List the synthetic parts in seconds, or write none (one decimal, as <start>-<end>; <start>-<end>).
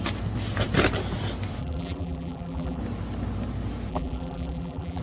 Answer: 1.6-2.8; 3.9-5.0